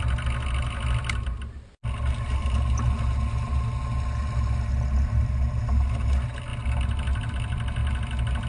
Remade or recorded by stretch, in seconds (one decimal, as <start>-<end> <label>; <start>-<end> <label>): 0.0-8.5 recorded